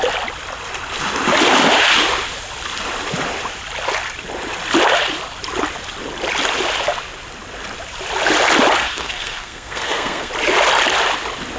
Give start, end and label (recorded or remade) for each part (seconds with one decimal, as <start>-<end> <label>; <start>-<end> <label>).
0.0-8.8 recorded; 8.8-10.3 remade; 10.3-11.6 recorded